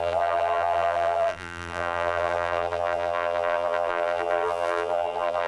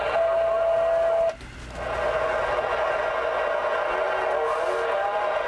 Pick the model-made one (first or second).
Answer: first